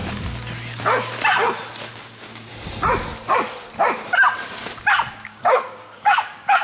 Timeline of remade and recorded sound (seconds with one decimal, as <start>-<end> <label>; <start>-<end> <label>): 0.0-1.9 recorded; 1.9-2.5 remade; 2.5-5.1 recorded; 5.1-6.6 remade